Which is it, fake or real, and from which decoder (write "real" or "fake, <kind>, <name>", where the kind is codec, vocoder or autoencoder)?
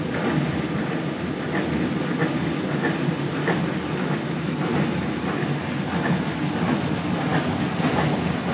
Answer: real